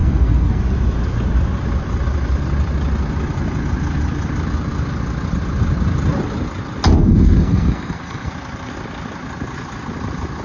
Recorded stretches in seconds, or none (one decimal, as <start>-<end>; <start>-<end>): 0.6-7.0; 8.3-10.4